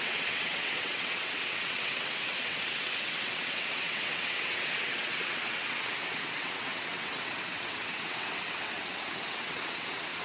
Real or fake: fake